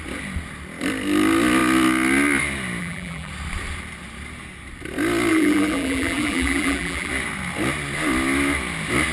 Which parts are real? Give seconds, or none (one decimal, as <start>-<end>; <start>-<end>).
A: 0.0-2.8; 3.3-5.3; 7.1-9.1